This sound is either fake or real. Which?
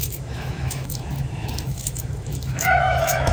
fake